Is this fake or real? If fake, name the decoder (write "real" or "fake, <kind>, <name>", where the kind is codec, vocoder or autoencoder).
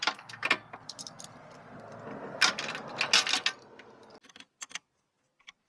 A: real